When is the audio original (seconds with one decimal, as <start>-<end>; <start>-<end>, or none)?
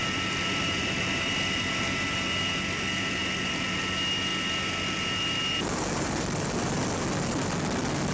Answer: 0.0-8.1